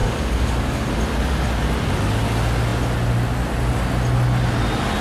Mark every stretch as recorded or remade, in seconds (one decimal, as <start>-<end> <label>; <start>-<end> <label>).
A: 0.0-0.9 remade; 0.9-5.0 recorded